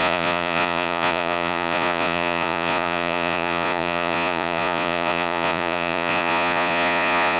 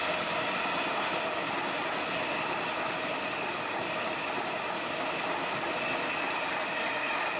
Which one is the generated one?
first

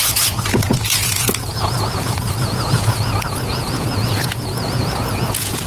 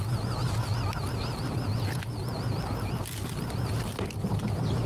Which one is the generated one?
first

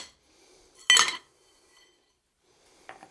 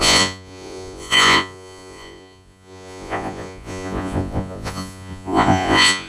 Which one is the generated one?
second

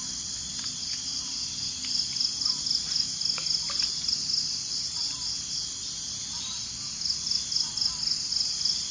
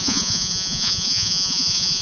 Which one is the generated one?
second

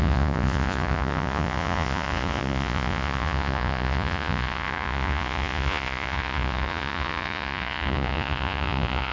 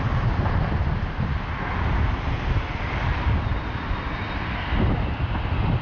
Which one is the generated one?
first